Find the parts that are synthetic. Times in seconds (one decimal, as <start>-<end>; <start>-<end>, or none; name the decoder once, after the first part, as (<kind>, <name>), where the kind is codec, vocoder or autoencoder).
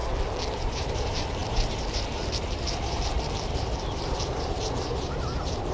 0.6-5.7 (vocoder, BigVGAN v2)